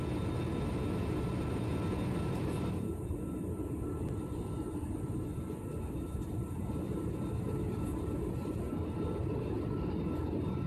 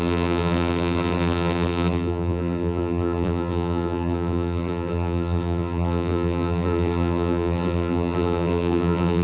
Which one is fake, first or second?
second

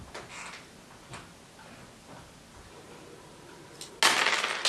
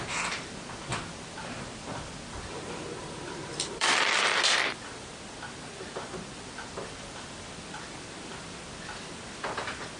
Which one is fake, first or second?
second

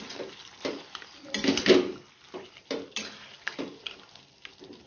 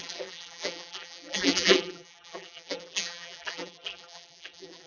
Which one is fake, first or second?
second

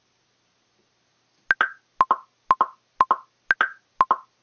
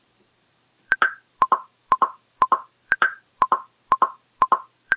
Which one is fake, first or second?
second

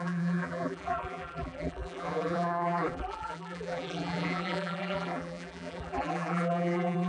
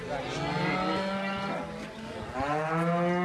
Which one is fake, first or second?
first